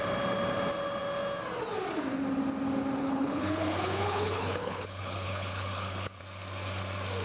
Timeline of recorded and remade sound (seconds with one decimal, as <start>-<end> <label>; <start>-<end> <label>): 0.0-3.0 recorded; 3.0-6.2 remade; 6.2-7.2 recorded